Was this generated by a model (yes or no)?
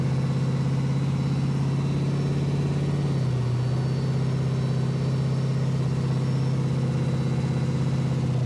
no